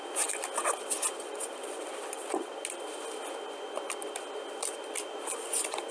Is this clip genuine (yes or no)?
yes